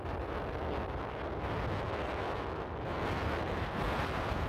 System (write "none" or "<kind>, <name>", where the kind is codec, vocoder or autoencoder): none